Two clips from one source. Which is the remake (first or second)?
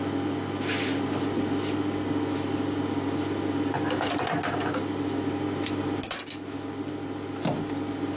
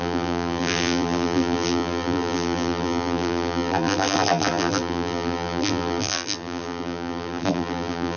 second